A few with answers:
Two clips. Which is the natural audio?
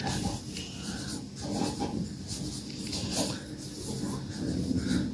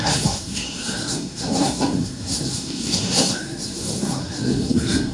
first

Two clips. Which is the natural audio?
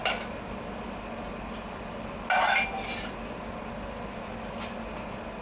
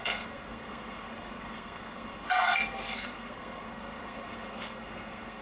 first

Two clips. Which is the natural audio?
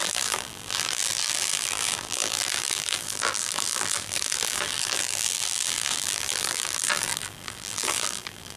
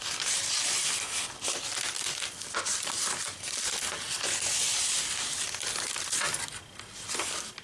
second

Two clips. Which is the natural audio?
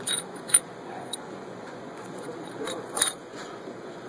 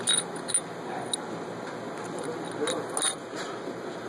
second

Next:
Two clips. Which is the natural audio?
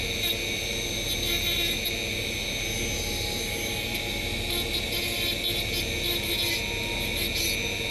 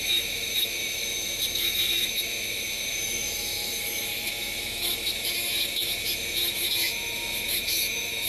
first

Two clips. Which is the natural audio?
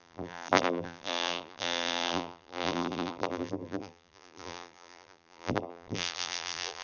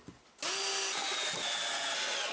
second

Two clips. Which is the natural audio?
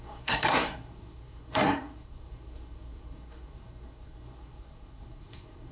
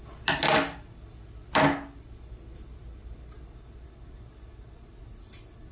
second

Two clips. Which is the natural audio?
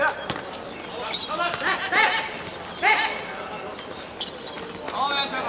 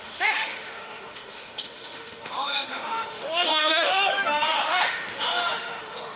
first